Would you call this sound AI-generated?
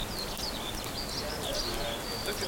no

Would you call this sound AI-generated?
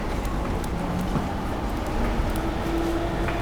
no